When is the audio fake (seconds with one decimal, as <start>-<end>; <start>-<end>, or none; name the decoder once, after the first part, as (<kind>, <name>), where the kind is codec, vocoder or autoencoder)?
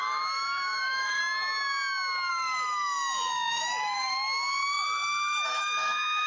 0.0-1.2 (autoencoder, DAC-VAE); 2.3-6.3